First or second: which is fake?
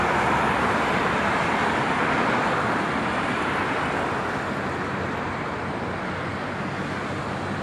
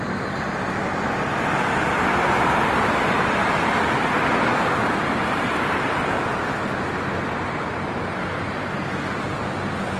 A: second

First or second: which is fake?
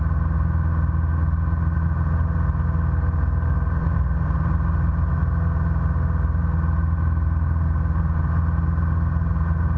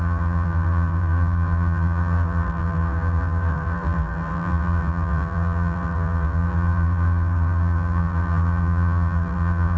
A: second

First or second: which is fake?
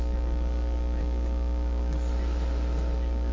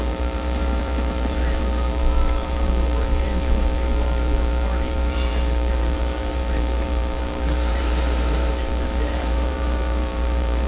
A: second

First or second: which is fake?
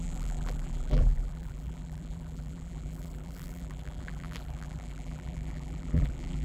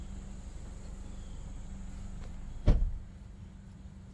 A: first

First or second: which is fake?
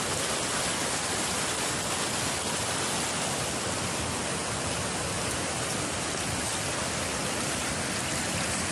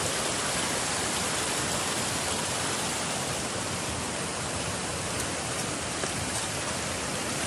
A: second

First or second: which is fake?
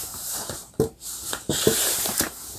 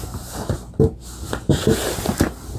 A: first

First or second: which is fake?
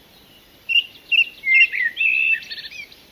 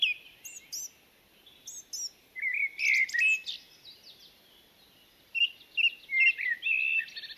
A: first